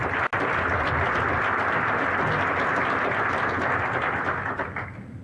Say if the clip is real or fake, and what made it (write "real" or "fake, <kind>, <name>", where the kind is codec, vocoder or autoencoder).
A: real